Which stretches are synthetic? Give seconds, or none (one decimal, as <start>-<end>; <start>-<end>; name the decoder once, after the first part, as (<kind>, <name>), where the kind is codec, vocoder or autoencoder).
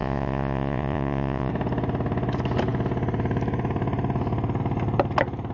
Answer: 0.0-1.5 (vocoder, Vocos)